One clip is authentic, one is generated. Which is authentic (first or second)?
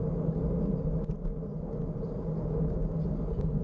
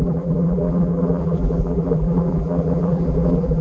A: first